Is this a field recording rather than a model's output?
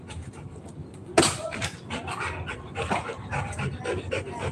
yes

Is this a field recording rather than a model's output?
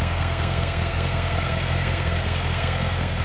no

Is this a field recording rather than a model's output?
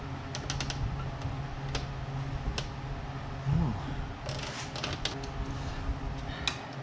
yes